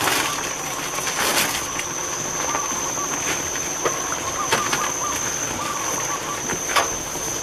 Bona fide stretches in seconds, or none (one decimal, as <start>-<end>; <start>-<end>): 0.0-2.0; 6.2-7.4